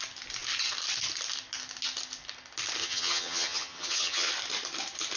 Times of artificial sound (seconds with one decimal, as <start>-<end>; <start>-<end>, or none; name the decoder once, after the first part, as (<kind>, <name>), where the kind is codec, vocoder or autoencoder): 2.8-4.3 (vocoder, HiFi-GAN)